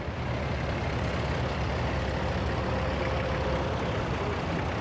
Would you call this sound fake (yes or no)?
no